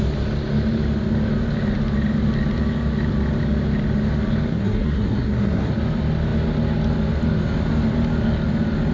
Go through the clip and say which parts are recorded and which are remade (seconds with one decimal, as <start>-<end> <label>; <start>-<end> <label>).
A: 0.0-4.5 recorded; 4.5-5.7 remade; 5.7-8.9 recorded